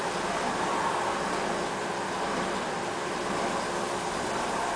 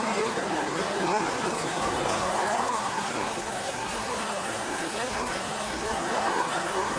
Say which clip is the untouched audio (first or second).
first